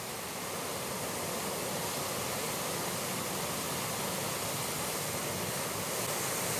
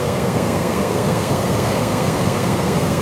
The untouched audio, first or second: first